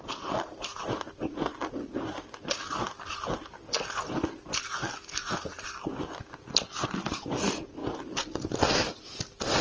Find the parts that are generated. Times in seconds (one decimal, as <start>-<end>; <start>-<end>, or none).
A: none